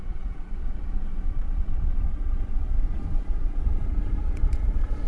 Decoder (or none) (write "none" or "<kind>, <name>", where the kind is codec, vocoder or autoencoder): vocoder, Vocos